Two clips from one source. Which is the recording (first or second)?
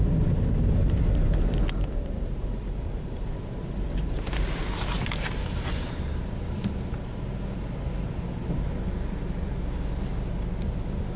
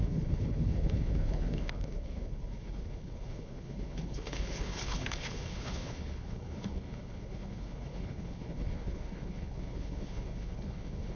first